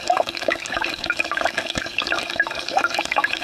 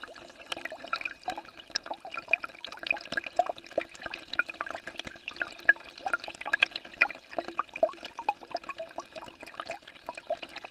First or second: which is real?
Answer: second